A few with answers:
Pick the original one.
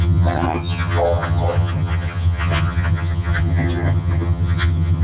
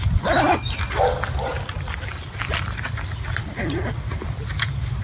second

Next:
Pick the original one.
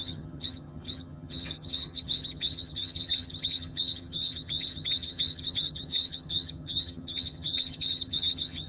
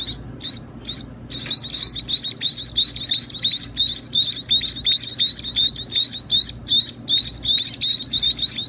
second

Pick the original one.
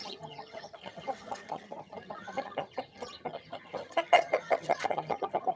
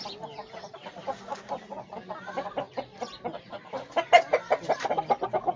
second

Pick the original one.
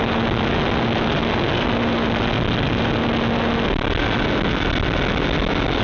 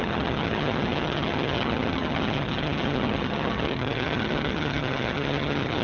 first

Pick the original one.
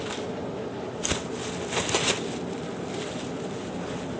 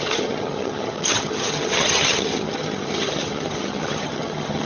first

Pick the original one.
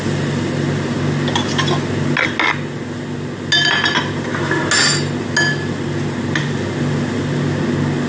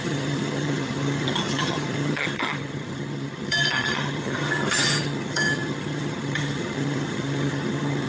first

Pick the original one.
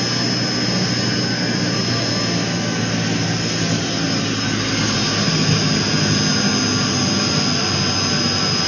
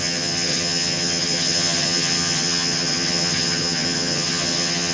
first